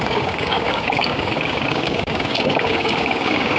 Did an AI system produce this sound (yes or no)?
yes